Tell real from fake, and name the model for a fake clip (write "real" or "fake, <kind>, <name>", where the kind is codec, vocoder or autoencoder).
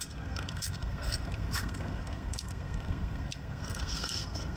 fake, codec, SNAC